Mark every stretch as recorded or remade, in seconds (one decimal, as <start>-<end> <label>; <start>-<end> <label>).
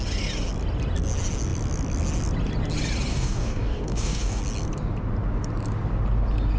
0.0-3.1 recorded; 3.1-4.4 remade; 4.4-6.6 recorded